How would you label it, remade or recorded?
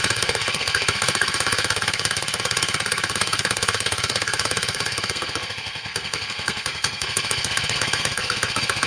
remade